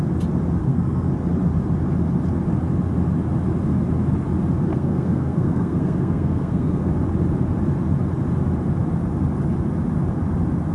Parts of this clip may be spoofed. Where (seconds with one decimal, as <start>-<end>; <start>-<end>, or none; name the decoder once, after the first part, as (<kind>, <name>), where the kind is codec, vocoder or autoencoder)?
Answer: 0.6-1.1 (codec, SNAC); 4.7-6.9